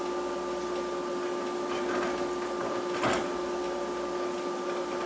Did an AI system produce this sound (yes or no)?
no